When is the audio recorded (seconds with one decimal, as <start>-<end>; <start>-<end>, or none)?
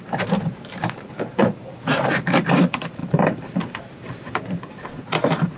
none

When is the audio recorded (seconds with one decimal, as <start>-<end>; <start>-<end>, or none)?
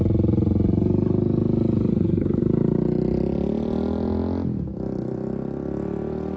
0.0-1.9; 2.4-6.4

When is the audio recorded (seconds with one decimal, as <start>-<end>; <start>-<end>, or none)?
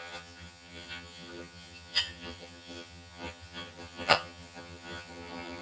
none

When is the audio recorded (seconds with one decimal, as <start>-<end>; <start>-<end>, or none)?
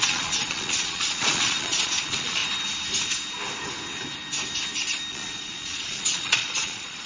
2.4-5.1